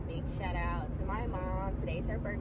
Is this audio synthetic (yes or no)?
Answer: no